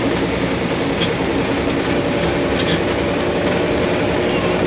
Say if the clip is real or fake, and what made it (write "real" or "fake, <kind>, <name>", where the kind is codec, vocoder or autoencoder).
real